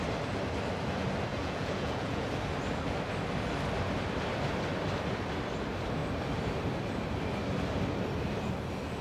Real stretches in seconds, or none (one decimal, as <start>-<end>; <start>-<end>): 0.0-1.3; 2.3-9.0